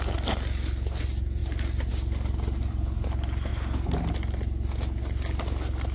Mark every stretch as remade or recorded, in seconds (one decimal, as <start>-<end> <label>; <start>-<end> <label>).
0.0-5.9 recorded